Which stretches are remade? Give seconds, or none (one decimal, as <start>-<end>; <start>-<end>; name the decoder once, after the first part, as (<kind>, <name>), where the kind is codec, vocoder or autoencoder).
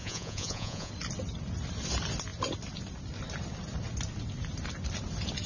0.0-0.9 (vocoder, Vocos)